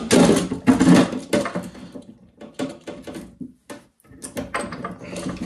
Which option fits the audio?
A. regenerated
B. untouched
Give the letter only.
B